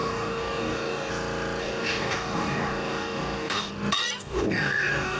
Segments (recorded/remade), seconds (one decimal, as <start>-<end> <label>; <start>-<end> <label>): 0.0-1.1 remade; 1.1-1.6 recorded; 1.6-3.7 remade; 3.7-4.2 recorded; 4.2-5.2 remade